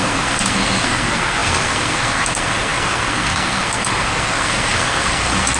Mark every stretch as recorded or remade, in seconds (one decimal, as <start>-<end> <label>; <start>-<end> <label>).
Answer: 0.0-5.6 remade